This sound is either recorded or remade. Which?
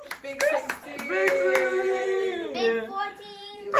remade